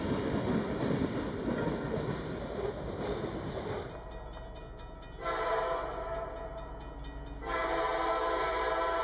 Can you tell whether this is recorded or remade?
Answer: recorded